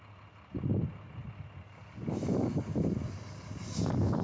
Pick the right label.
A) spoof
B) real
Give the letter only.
B